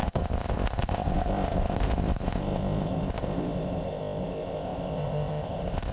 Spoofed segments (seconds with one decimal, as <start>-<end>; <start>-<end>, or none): 0.0-5.9